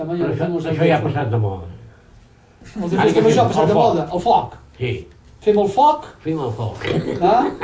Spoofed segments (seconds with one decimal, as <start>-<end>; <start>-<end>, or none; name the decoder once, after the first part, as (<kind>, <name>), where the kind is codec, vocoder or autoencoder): none

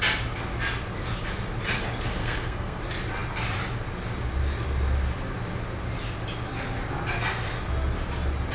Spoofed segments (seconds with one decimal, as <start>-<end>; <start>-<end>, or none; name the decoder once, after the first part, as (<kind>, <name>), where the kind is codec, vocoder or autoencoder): 2.2-2.8 (codec, SNAC)

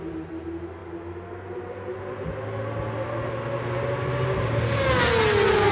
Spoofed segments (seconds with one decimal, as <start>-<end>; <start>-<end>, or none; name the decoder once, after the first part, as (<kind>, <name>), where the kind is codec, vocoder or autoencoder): none

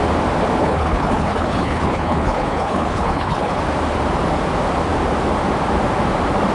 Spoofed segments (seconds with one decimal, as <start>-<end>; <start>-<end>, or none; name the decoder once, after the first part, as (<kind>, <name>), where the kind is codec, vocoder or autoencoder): 0.6-3.6 (codec, HILCodec)